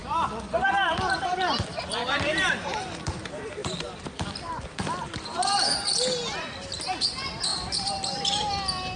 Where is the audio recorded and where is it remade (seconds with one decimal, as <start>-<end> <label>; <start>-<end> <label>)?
0.0-2.5 remade; 2.5-7.5 recorded; 7.5-8.5 remade; 8.5-9.0 recorded